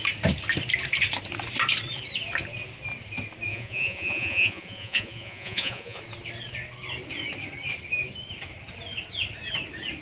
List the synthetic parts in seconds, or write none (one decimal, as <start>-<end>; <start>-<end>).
3.5-6.0